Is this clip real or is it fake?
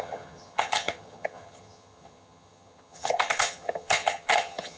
fake